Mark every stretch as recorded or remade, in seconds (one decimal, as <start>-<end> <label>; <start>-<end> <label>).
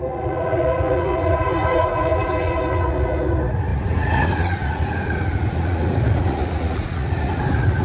0.0-7.8 remade